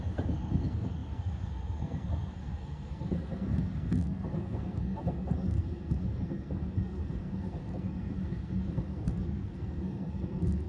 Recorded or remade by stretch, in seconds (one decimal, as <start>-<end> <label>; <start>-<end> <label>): 0.0-10.7 remade

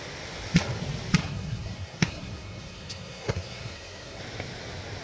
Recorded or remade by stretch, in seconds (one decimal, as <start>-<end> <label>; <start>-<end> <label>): 0.0-1.2 recorded; 1.2-4.2 remade; 4.2-5.0 recorded

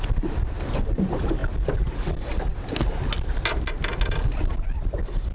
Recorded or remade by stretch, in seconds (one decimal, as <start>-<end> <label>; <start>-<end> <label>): 0.0-5.3 recorded

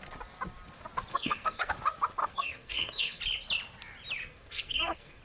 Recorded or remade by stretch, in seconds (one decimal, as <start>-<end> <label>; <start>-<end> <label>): 0.0-1.1 recorded; 1.1-1.7 remade; 1.7-2.2 recorded; 2.2-3.2 remade; 3.2-4.2 recorded; 4.2-5.2 remade

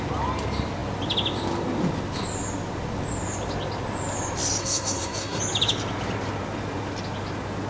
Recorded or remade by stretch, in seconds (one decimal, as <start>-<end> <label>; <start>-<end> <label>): 0.0-4.6 recorded; 4.6-5.4 remade; 5.4-7.7 recorded